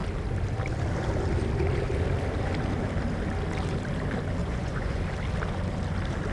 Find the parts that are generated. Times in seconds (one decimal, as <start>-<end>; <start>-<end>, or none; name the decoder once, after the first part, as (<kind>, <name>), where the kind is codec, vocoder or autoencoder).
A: 4.4-5.0 (vocoder, Vocos)